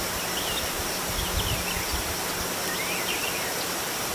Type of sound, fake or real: real